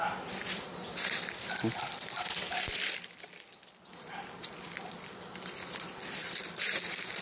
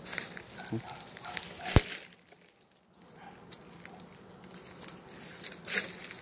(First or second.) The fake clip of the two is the first